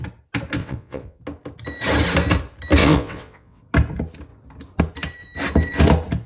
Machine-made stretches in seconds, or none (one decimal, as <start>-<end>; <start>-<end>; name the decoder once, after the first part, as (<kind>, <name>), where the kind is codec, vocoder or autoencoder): 0.6-1.2 (vocoder, WaveNeXt); 2.8-3.6